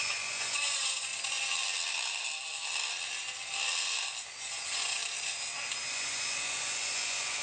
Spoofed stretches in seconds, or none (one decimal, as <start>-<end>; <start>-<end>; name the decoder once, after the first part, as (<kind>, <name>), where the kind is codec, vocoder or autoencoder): 0.0-1.1 (vocoder, Vocos); 4.3-5.0; 5.9-7.4